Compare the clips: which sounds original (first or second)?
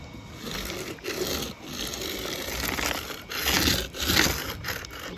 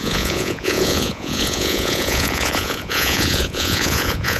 first